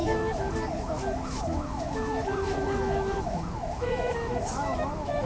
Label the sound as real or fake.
fake